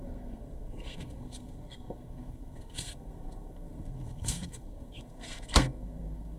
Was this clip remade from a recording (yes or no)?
yes